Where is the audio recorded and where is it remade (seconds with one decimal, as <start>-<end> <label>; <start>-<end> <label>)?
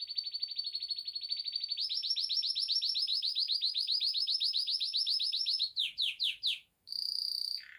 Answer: 0.0-3.1 recorded; 3.1-6.9 remade; 6.9-7.8 recorded